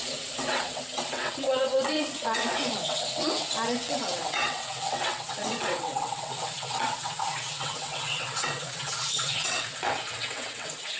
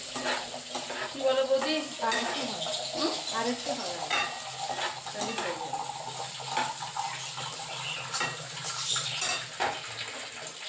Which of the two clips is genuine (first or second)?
second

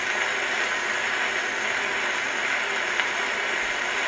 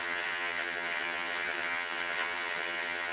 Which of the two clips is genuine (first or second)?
first